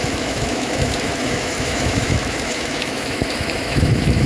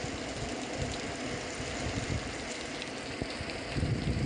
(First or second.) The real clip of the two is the second